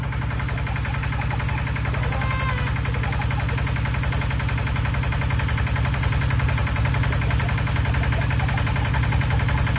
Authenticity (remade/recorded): recorded